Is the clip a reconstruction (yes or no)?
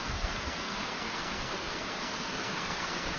yes